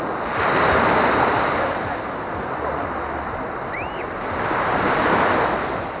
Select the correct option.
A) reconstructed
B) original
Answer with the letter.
B